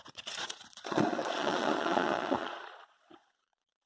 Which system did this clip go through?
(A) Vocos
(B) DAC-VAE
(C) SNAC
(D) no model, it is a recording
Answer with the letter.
A